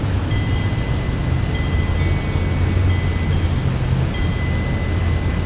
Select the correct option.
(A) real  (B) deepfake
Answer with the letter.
A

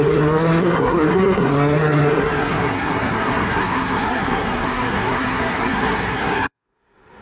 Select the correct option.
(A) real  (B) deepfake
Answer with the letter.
B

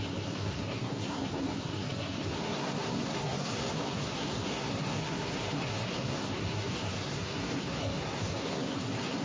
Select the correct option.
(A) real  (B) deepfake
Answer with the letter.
B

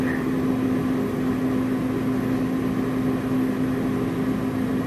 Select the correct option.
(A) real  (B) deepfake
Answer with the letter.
A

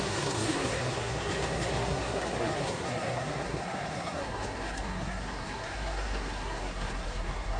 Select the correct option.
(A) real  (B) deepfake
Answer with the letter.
B